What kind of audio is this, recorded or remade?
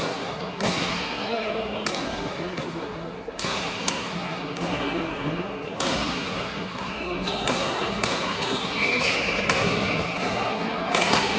remade